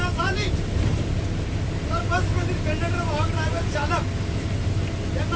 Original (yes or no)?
yes